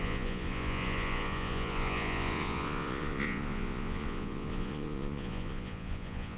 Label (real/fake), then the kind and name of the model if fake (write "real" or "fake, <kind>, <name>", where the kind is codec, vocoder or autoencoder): fake, vocoder, Vocos